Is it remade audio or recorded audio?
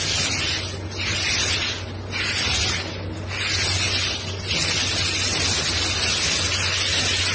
recorded